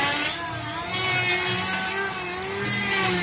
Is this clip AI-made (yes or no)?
no